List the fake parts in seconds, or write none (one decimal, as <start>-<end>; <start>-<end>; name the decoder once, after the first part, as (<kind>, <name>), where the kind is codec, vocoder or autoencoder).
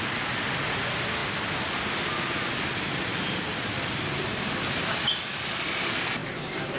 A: none